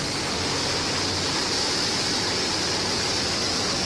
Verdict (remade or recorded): remade